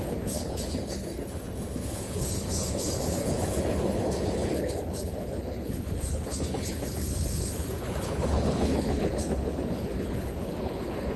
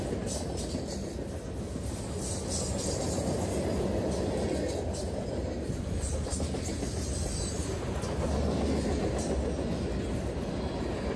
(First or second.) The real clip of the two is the second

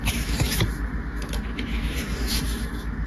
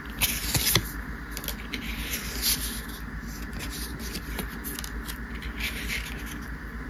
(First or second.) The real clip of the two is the second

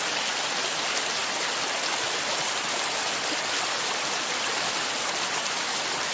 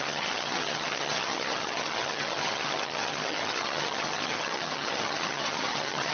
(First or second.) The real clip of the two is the first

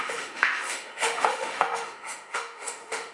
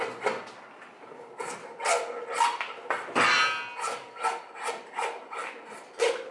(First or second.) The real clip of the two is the second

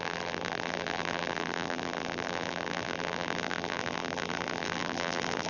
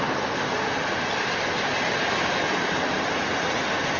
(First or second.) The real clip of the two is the second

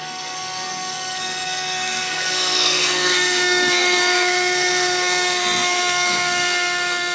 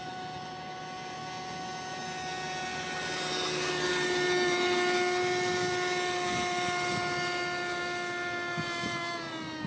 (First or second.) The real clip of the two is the second